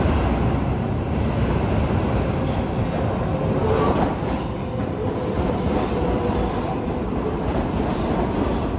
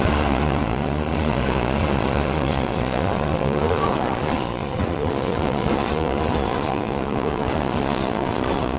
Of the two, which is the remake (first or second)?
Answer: second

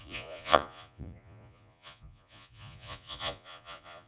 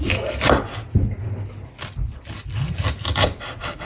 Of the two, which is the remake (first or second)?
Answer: first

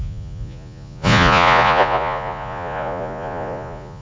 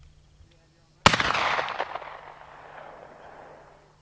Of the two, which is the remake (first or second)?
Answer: first